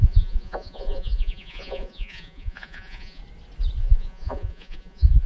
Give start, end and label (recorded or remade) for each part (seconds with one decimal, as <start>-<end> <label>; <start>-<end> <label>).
0.0-3.2 remade; 3.2-3.8 recorded; 3.8-5.3 remade